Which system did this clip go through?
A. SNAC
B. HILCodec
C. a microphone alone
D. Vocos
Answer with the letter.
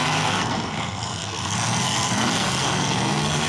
A